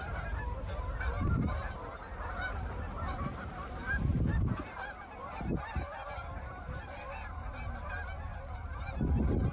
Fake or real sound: fake